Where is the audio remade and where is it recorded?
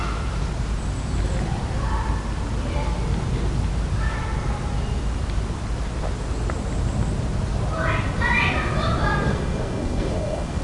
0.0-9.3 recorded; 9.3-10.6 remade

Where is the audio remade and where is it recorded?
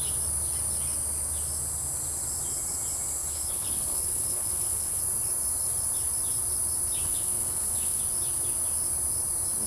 0.0-3.2 recorded; 3.2-5.0 remade; 5.0-7.0 recorded; 7.0-8.0 remade; 8.0-9.7 recorded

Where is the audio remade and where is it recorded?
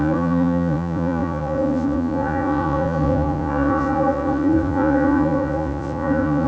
0.0-6.5 remade